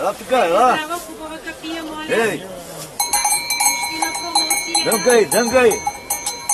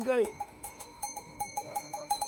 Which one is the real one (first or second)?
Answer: first